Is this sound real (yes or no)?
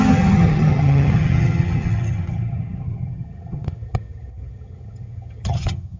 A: no